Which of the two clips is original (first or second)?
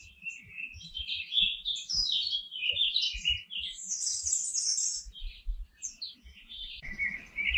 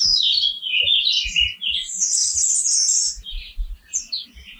second